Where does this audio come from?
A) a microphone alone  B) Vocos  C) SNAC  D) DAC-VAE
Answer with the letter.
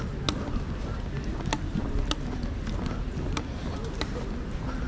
A